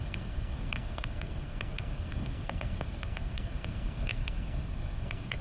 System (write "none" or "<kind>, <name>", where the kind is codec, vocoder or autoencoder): codec, SNAC